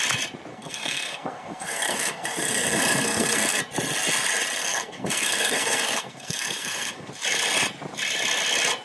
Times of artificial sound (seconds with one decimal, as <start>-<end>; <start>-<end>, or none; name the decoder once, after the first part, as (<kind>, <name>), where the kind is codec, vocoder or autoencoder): 0.5-3.6 (codec, SNAC); 4.6-7.1